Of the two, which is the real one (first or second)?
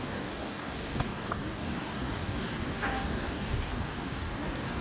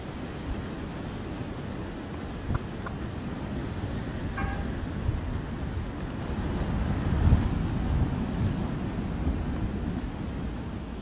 second